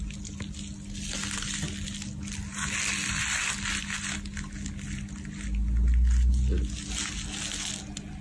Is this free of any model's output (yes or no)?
yes